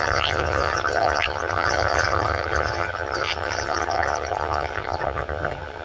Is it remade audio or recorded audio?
remade